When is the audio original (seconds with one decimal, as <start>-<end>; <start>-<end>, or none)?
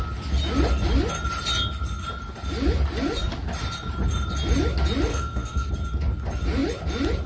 0.0-5.1; 5.7-7.3